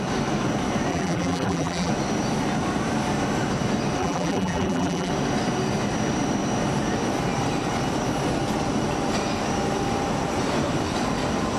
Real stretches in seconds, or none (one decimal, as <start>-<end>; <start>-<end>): 0.0-0.9; 1.9-4.0; 5.1-11.6